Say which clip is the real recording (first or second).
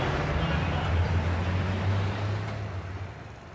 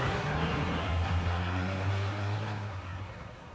first